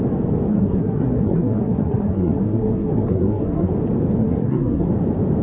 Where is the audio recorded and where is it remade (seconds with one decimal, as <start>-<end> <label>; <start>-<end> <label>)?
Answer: 0.0-0.5 recorded; 0.5-3.7 remade; 3.7-4.2 recorded; 4.2-4.9 remade; 4.9-5.4 recorded